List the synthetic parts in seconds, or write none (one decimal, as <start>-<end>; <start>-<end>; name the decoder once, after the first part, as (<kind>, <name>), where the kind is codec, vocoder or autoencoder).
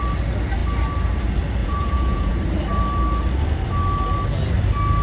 1.6-2.3 (vocoder, Vocos)